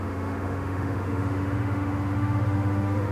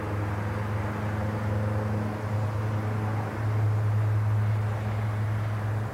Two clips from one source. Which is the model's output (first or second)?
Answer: first